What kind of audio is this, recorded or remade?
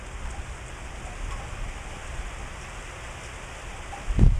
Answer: recorded